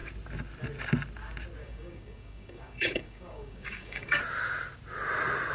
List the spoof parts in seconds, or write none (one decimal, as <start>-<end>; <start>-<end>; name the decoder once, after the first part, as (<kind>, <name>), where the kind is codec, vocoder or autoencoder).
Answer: 1.6-4.2 (codec, DAC)